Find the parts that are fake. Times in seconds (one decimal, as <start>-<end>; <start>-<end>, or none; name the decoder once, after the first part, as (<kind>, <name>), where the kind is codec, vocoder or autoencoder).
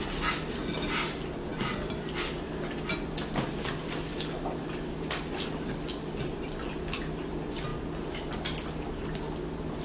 none